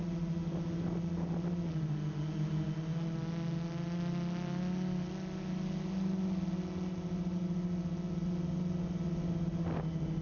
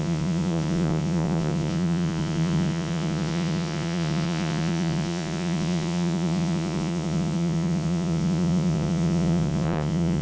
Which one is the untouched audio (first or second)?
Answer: first